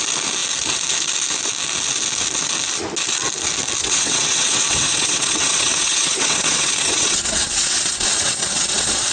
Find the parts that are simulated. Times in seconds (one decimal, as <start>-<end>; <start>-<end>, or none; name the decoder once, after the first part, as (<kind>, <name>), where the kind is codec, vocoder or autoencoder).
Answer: 3.8-9.1 (vocoder, WaveNeXt)